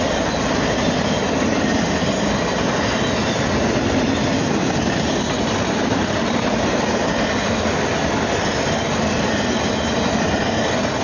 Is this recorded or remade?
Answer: recorded